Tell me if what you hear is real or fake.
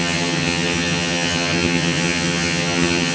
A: fake